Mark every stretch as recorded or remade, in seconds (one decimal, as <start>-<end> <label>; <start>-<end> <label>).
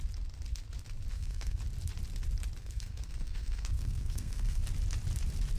0.0-1.1 recorded; 1.1-1.6 remade; 1.6-2.6 recorded; 2.6-4.6 remade; 4.6-5.6 recorded